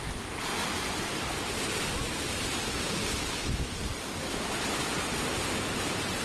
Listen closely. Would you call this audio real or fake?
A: real